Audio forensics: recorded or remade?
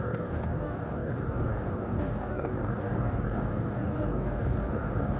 remade